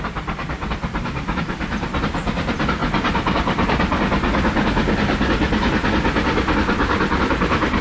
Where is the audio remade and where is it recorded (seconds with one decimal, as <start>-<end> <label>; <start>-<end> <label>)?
0.0-2.8 remade; 2.8-7.3 recorded; 7.3-7.8 remade